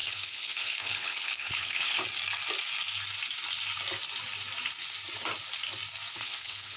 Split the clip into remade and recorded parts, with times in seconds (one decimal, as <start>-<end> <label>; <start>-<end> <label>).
0.0-2.0 remade; 2.0-6.1 recorded; 6.1-6.8 remade